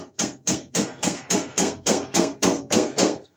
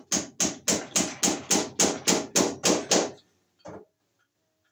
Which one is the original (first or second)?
second